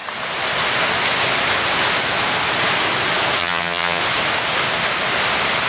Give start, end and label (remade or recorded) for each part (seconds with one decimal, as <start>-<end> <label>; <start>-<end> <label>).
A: 0.0-3.4 recorded; 3.4-4.0 remade; 4.0-5.7 recorded